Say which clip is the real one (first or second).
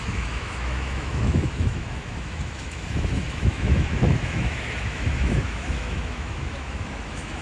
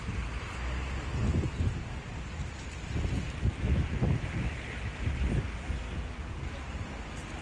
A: second